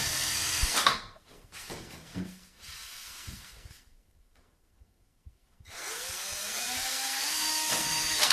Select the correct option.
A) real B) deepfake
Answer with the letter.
B